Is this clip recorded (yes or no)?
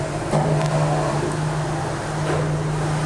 yes